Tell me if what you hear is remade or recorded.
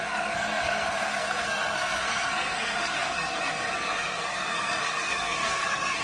remade